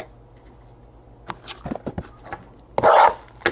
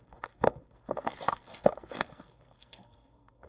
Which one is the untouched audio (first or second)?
first